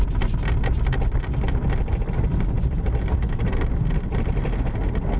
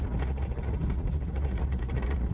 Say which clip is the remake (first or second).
second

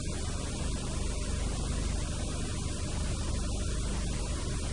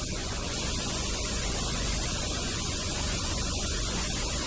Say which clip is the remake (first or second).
second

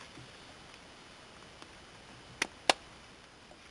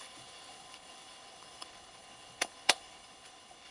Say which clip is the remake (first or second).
second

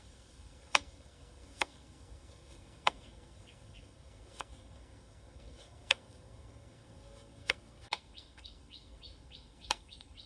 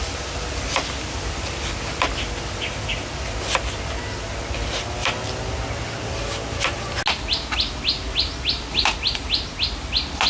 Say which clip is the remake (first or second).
first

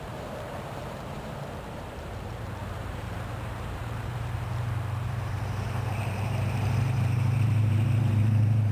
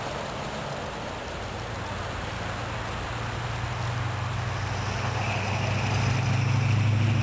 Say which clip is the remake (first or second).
first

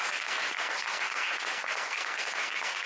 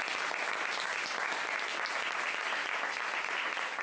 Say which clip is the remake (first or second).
first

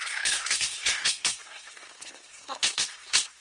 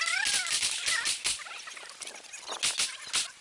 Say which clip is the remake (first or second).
first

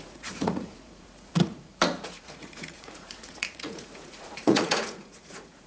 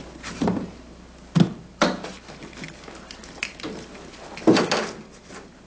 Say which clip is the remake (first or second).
first